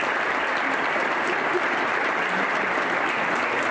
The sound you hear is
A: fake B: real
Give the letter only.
B